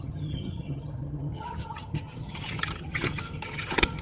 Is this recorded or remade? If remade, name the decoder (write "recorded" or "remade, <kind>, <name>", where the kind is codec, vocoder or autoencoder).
remade, vocoder, HiFi-GAN